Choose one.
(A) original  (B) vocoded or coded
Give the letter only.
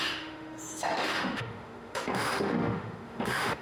B